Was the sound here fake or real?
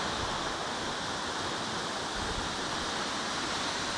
real